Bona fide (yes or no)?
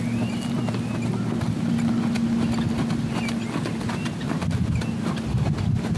yes